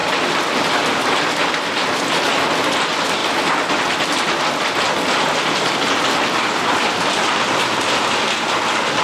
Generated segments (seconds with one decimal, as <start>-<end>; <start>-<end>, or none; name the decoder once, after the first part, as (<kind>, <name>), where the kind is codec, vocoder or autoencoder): 0.0-1.2 (vocoder, BigVGAN v2)